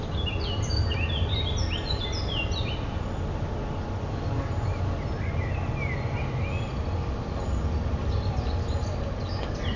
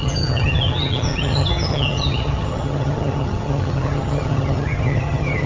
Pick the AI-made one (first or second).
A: second